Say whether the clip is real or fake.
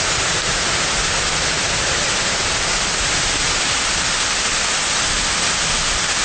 real